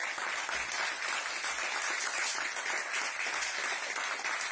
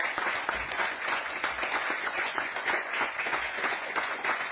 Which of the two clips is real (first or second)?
first